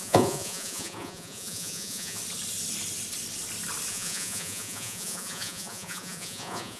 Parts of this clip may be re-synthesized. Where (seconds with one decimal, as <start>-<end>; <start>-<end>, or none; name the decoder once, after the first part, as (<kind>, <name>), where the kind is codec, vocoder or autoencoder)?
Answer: 0.0-2.2 (vocoder, Vocos); 3.9-6.8